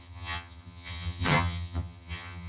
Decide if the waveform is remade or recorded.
remade